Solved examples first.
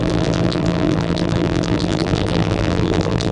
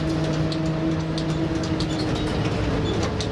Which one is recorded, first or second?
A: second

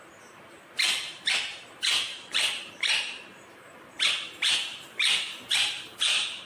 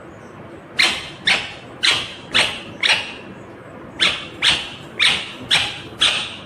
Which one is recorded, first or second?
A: second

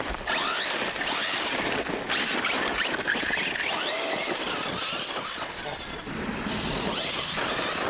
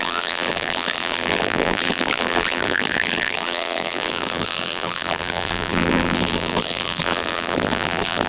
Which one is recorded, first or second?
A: first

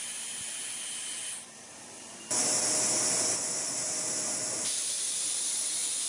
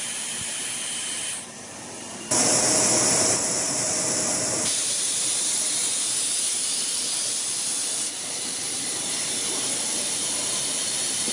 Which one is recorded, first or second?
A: first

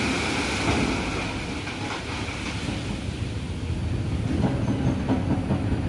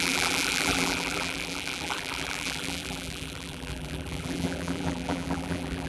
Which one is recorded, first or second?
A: first